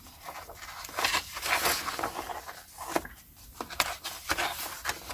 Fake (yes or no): no